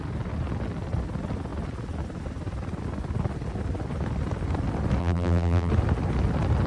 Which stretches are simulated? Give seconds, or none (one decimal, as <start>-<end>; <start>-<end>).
5.0-5.7